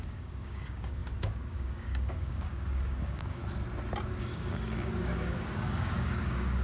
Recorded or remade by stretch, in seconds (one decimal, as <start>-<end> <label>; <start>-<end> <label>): 0.0-3.4 remade; 3.4-4.1 recorded; 4.1-6.6 remade